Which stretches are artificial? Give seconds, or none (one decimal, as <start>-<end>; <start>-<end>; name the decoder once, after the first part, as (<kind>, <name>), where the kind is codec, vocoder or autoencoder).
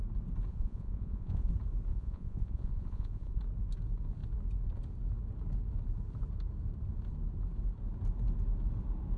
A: 0.5-1.5 (vocoder, Vocos); 1.9-3.4